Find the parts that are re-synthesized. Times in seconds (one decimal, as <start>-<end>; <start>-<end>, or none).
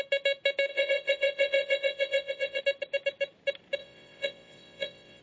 0.7-2.6; 3.8-5.2